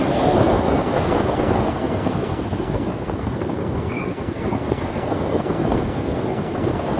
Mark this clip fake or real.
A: fake